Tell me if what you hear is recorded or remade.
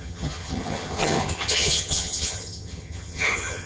remade